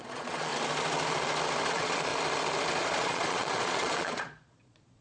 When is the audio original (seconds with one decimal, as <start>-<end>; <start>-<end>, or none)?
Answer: 0.5-1.7; 2.1-2.8